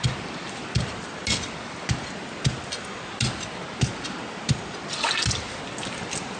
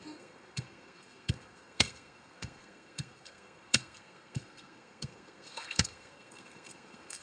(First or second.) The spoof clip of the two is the second